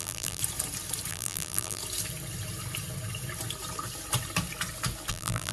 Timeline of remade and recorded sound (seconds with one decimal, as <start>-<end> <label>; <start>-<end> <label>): 0.0-0.4 remade; 0.4-1.1 recorded; 1.1-1.8 remade; 1.8-5.1 recorded; 5.1-5.5 remade